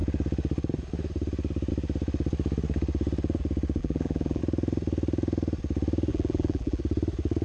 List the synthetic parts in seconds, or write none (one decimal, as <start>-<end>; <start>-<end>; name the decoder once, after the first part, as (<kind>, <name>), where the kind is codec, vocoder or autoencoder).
3.8-4.4 (vocoder, BigVGAN v2); 6.1-6.8